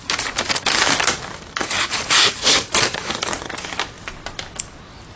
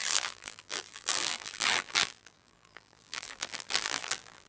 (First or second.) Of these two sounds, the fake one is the second